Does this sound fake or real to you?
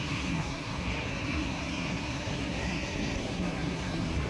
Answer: fake